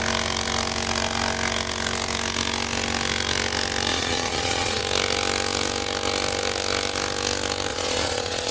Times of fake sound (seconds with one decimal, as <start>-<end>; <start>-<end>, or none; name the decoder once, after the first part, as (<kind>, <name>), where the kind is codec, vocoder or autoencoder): 3.9-4.8 (vocoder, Vocos); 7.7-8.5